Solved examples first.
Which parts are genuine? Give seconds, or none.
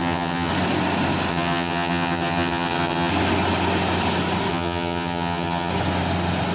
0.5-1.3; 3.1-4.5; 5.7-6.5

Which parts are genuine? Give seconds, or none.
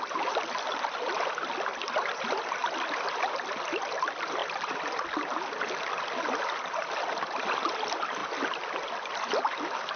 0.0-10.0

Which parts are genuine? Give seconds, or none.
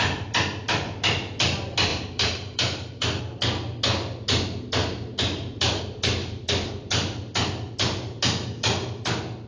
0.0-1.9; 3.2-4.8; 5.8-6.2; 6.7-9.5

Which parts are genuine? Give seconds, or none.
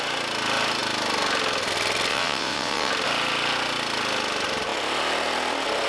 0.0-2.1; 2.9-5.9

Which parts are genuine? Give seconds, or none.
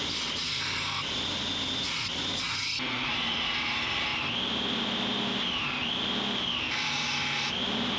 0.0-8.0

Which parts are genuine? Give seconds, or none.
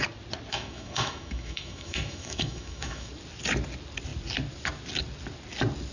0.0-0.5; 3.1-5.9